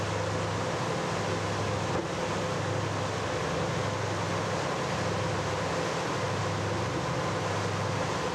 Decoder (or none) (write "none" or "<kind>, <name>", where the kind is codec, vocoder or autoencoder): none